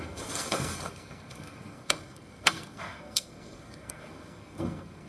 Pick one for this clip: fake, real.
fake